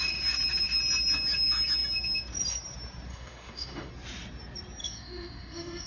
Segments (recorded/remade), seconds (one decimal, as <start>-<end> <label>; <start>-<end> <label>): 0.0-3.1 recorded; 3.1-3.9 remade; 3.9-4.8 recorded; 4.8-5.9 remade